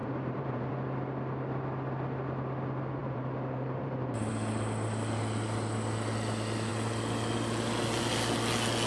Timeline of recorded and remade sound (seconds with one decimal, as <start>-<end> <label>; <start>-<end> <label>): 0.0-0.7 remade; 0.7-3.0 recorded; 3.0-4.3 remade; 4.3-8.9 recorded